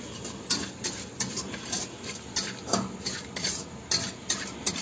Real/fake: real